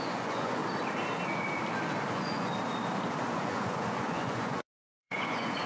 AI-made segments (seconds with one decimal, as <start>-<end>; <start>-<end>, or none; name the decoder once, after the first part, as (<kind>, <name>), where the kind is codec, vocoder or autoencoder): 0.0-0.6 (vocoder, Vocos); 2.1-2.5; 3.4-5.7